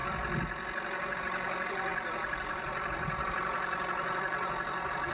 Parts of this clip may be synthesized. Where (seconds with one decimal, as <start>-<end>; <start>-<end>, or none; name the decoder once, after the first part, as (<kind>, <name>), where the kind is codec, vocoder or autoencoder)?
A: 1.2-5.1 (vocoder, BigVGAN v2)